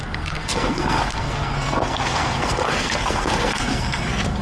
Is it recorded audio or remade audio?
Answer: remade